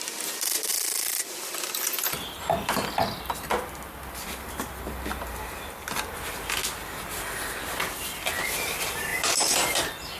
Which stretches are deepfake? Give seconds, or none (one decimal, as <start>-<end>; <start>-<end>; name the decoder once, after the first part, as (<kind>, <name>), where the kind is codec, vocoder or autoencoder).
0.7-3.5 (vocoder, BigVGAN v2); 9.1-9.7